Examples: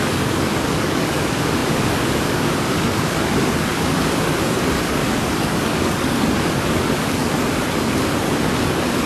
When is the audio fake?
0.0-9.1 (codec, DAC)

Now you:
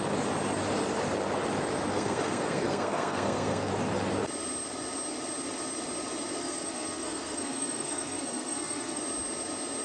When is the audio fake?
1.9-3.7 (codec, SNAC); 6.4-9.0

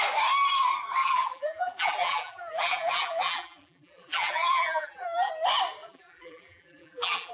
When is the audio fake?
1.0-5.3 (vocoder, BigVGAN v2); 5.8-7.3

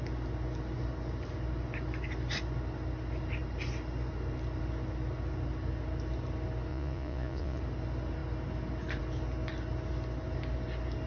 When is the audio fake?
6.7-7.6 (vocoder, Vocos)

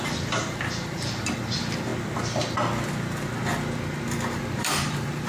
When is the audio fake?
0.0-1.9 (vocoder, BigVGAN v2); 4.6-5.3

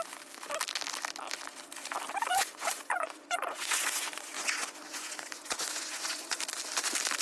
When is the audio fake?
2.3-6.4 (vocoder, Vocos)

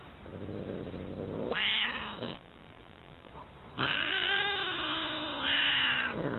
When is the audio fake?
2.2-3.3 (vocoder, BigVGAN v2); 3.9-4.4